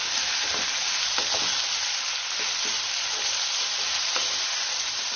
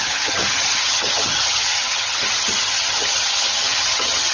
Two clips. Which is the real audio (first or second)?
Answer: first